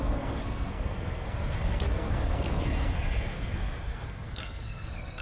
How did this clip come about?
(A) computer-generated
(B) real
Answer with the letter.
A